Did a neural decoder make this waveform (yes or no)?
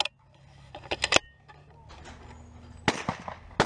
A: no